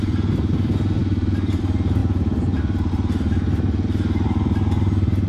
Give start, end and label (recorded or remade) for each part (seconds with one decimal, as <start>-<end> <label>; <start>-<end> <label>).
0.0-5.3 recorded